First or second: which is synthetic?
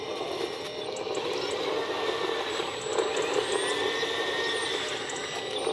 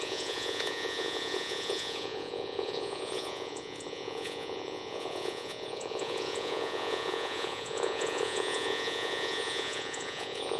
second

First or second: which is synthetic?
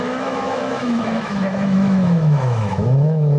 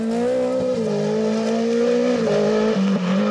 first